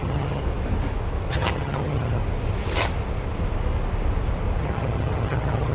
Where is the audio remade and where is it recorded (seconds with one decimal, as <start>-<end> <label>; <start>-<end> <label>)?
0.0-0.4 remade; 0.4-1.3 recorded; 1.3-2.2 remade; 2.2-4.6 recorded; 4.6-5.7 remade